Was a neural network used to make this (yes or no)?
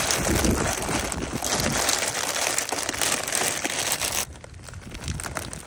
no